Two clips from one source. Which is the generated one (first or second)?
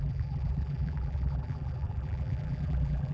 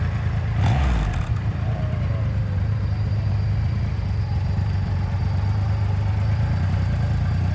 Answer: first